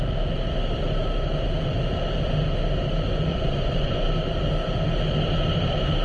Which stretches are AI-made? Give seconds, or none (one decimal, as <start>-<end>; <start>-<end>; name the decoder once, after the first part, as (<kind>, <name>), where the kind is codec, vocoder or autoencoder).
3.3-4.1 (vocoder, Vocos)